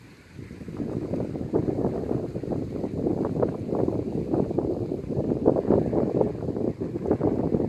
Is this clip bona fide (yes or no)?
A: yes